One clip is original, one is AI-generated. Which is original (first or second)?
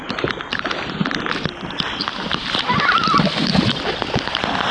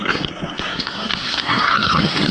first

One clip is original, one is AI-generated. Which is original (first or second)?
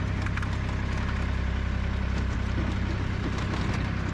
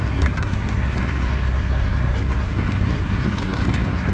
first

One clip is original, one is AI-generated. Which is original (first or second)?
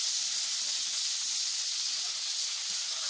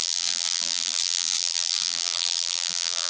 first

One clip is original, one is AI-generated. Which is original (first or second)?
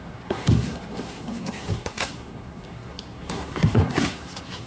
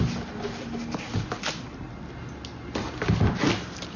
second